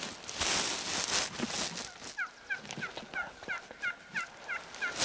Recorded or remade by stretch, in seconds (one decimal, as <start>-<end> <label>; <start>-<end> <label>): 0.0-5.0 recorded